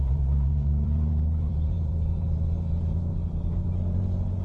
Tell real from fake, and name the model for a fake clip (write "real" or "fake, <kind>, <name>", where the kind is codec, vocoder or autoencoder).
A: fake, vocoder, BigVGAN v2